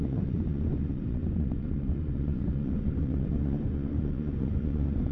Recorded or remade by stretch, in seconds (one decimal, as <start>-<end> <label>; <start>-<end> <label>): 0.0-5.1 remade